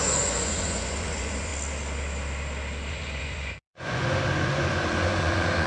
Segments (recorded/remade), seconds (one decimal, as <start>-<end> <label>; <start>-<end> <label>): 0.0-1.5 remade; 1.5-2.9 recorded; 2.9-5.7 remade